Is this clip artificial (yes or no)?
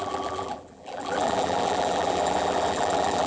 yes